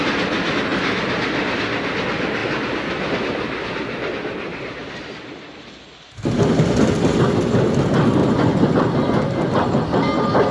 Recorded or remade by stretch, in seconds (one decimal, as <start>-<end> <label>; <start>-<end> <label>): 0.0-8.2 recorded; 8.2-8.8 remade; 8.8-10.5 recorded